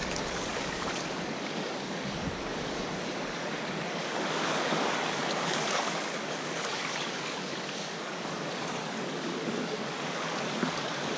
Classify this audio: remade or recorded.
remade